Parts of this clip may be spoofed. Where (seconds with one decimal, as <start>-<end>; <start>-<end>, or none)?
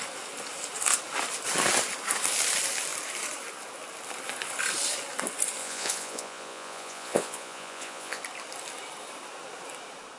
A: 5.6-8.2